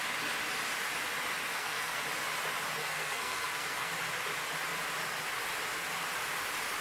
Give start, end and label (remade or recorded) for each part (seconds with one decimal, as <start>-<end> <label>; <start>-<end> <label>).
0.0-1.5 recorded; 1.5-2.0 remade; 2.0-2.8 recorded; 2.8-3.9 remade; 3.9-6.8 recorded